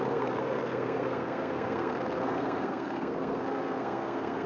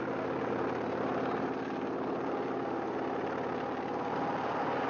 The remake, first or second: first